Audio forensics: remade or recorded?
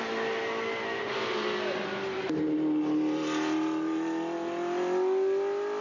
recorded